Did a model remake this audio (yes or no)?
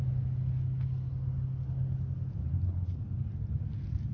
no